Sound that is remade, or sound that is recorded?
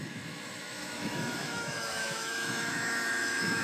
remade